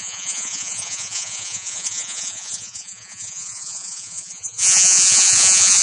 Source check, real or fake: fake